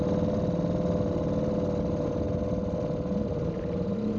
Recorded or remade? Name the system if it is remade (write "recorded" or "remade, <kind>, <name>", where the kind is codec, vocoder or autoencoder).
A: recorded